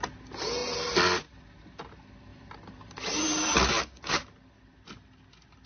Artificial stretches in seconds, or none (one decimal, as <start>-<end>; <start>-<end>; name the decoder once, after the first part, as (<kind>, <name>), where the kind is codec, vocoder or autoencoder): 2.3-3.5 (vocoder, BigVGAN v2)